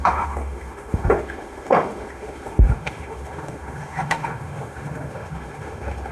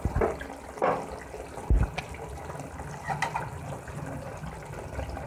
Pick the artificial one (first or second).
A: first